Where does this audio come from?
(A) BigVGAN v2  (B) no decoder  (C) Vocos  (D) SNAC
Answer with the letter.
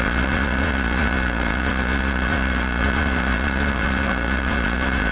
C